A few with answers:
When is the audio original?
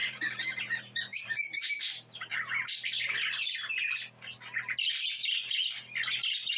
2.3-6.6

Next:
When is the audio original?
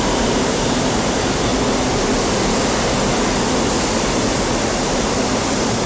1.5-5.0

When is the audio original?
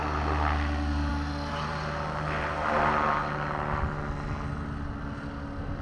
0.0-5.8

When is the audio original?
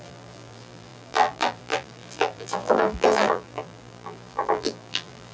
none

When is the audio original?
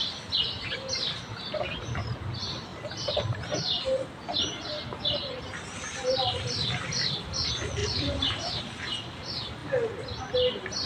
0.0-7.8; 8.6-9.6; 10.2-10.9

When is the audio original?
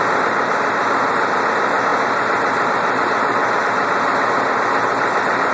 0.0-5.5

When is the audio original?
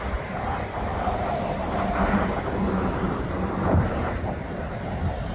none